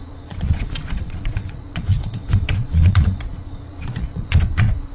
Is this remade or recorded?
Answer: remade